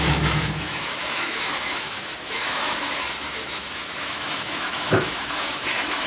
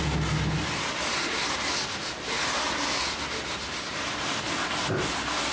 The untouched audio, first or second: second